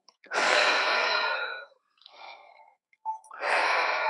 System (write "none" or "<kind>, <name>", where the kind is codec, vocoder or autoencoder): codec, SNAC